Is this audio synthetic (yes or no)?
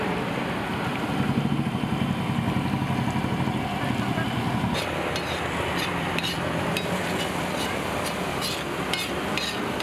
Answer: no